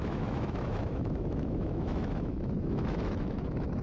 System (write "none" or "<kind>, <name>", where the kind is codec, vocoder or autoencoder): autoencoder, DAC-VAE